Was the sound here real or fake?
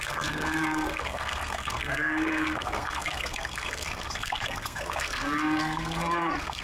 fake